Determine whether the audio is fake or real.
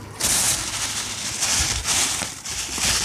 real